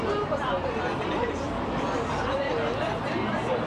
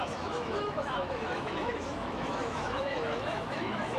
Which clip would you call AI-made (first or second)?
second